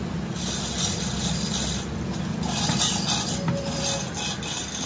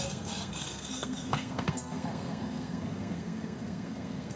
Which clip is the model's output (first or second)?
second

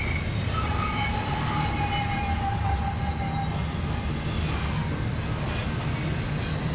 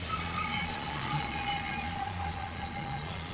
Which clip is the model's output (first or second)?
second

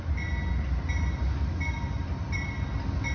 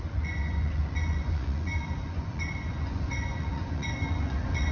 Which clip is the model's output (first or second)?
second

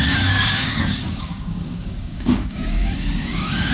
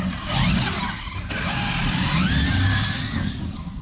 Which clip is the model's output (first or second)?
first